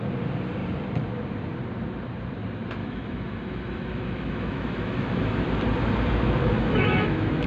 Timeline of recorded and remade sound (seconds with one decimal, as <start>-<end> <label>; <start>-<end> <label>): 0.0-2.8 recorded; 2.8-5.4 remade; 5.4-6.4 recorded; 6.4-7.5 remade

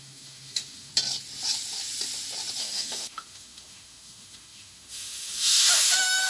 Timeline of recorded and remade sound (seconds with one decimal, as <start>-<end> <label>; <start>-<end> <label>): 0.0-0.9 remade; 0.9-2.6 recorded; 2.6-6.3 remade

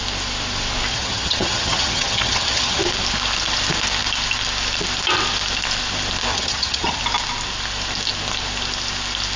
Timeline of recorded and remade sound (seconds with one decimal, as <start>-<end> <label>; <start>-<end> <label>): 0.0-0.9 recorded; 0.9-2.8 remade; 2.8-6.3 recorded; 6.3-7.0 remade; 7.0-9.4 recorded